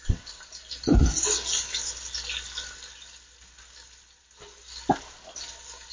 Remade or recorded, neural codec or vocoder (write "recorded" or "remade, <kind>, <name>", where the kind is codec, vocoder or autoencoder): recorded